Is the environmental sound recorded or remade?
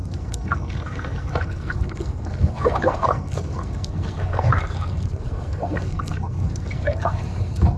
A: remade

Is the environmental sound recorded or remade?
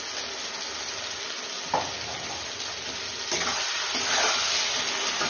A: recorded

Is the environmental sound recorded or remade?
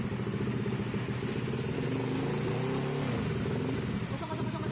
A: recorded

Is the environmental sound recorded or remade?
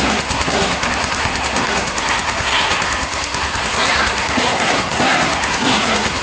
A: remade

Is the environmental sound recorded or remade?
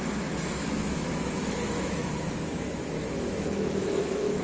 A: remade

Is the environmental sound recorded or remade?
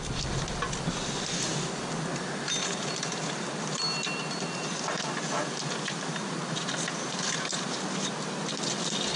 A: recorded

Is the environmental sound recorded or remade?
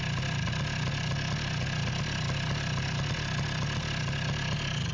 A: recorded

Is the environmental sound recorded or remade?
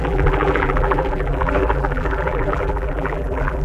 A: remade